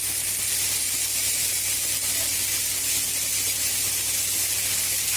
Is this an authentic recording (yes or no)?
yes